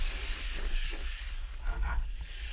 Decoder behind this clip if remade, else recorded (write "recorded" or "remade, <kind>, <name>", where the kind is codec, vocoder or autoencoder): remade, codec, DAC